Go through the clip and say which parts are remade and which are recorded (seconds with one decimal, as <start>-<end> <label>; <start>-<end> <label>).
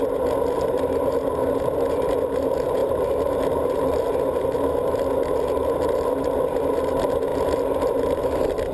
0.0-2.8 recorded; 2.8-3.4 remade; 3.4-8.7 recorded